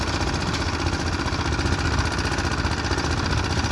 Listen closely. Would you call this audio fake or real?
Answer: real